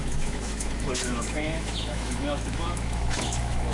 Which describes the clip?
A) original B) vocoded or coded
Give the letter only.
B